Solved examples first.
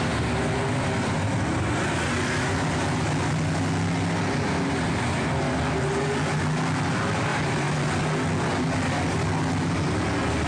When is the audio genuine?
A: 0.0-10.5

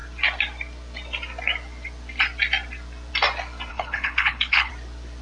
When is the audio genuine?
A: 0.0-3.7; 4.7-5.2

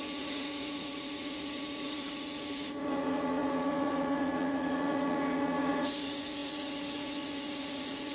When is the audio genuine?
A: none

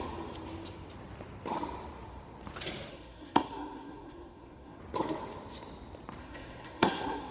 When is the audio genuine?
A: 0.0-2.9; 4.8-6.2

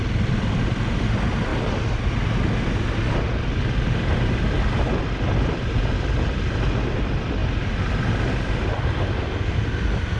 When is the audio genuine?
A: 0.0-10.2

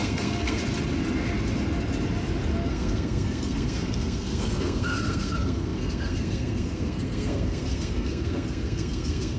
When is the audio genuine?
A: 0.6-2.7

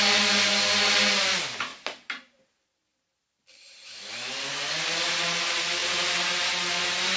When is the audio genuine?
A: 0.0-7.2